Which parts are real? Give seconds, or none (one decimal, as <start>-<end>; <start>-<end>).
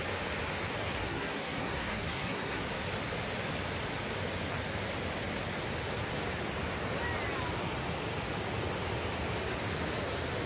0.0-0.8; 2.6-10.5